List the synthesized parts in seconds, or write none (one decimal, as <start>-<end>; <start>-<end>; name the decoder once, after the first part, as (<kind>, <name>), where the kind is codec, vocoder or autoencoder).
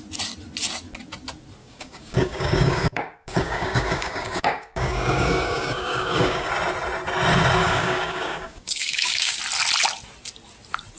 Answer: 1.6-6.5 (codec, DAC); 7.6-9.4